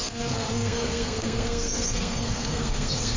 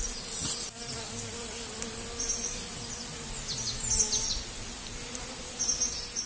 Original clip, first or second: second